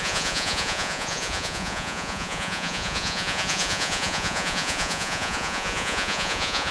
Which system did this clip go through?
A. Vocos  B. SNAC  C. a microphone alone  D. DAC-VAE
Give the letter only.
A